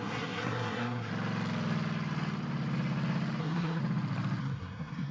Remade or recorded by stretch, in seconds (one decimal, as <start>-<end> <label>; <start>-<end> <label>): 0.0-1.1 remade; 1.1-3.4 recorded; 3.4-3.8 remade; 3.8-4.4 recorded; 4.4-5.1 remade